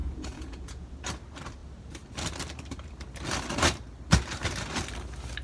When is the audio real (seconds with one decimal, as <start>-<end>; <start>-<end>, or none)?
0.9-5.4